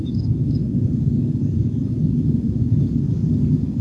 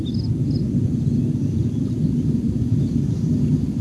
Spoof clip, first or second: first